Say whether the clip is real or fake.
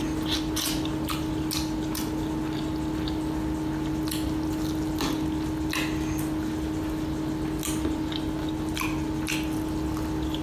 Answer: real